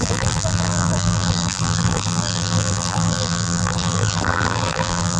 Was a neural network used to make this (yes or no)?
yes